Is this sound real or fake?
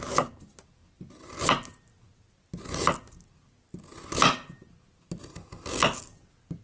real